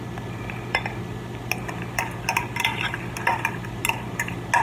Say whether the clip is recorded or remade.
recorded